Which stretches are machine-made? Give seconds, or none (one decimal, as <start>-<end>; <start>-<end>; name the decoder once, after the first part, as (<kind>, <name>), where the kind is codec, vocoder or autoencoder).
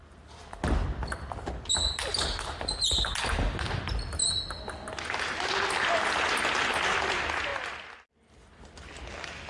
none